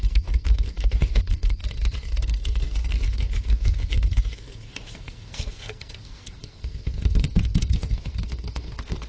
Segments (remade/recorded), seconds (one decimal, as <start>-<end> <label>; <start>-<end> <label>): 0.0-1.6 remade; 1.6-2.2 recorded; 2.2-9.1 remade